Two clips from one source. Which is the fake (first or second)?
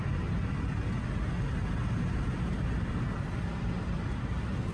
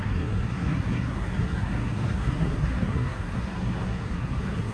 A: second